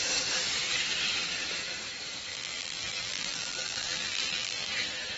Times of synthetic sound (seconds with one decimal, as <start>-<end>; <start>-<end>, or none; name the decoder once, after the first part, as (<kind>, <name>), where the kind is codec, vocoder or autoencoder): 2.3-4.7 (vocoder, BigVGAN v2)